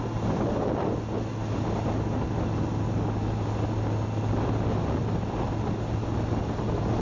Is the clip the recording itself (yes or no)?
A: yes